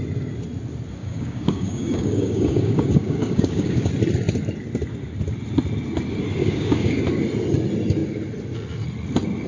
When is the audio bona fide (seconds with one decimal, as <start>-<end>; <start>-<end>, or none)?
0.0-1.0; 3.9-6.4; 7.0-9.5